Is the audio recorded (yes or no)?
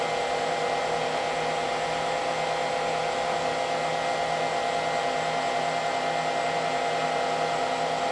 yes